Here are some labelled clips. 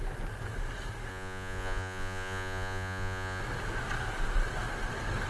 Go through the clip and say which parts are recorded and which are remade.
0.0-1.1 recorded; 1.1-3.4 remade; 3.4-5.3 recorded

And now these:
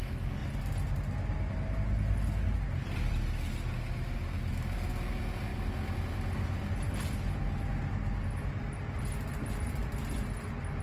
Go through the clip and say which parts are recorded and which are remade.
0.0-10.8 recorded

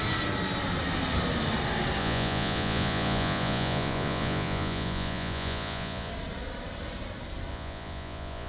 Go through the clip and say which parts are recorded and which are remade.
0.0-2.0 recorded; 2.0-6.1 remade; 6.1-7.5 recorded; 7.5-8.5 remade

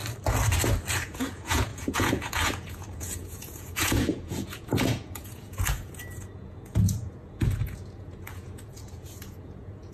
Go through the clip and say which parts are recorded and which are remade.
0.0-0.9 recorded; 0.9-9.9 remade

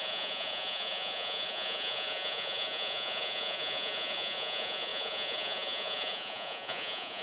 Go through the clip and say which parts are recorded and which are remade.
0.0-7.2 remade

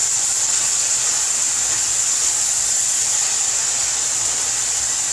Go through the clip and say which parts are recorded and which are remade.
0.0-0.7 remade; 0.7-5.1 recorded

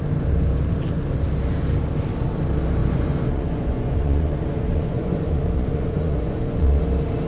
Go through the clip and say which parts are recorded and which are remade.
0.0-2.8 recorded; 2.8-6.8 remade; 6.8-7.3 recorded

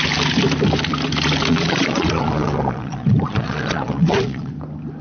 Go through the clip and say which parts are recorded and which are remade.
0.0-1.5 recorded; 1.5-4.5 remade; 4.5-5.0 recorded